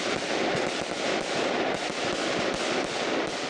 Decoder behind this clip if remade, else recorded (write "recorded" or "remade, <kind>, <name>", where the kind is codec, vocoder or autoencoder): recorded